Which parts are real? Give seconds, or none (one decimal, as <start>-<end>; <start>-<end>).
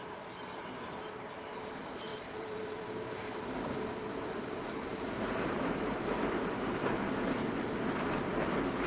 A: 6.8-7.3